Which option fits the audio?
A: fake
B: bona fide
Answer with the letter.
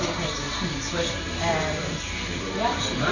B